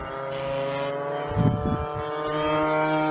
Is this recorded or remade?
recorded